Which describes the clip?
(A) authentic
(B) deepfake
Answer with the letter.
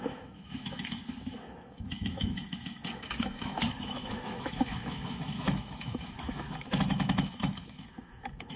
B